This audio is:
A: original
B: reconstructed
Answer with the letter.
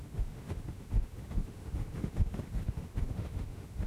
B